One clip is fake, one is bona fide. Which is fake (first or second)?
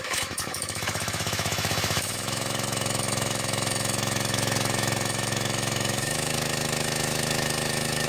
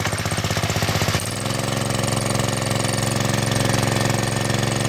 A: first